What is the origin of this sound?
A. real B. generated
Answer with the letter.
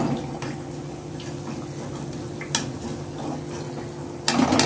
A